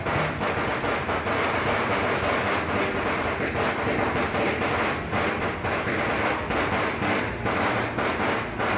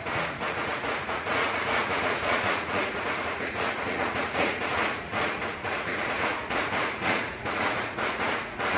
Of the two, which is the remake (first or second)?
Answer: second